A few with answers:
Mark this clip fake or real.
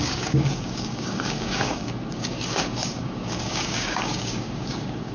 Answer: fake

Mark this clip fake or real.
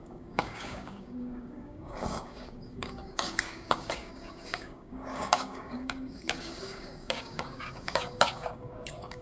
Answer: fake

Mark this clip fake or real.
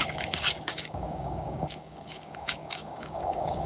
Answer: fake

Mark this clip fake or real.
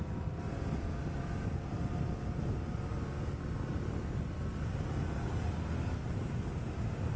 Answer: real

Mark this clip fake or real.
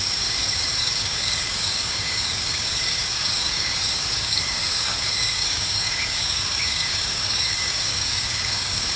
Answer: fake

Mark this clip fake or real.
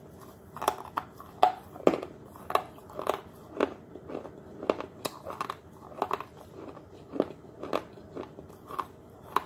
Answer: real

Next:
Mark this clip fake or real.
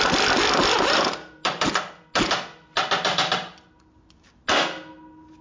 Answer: real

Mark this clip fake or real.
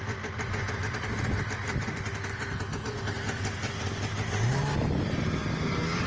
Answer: real